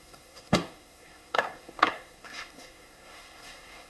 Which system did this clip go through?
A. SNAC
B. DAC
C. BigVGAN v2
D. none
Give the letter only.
A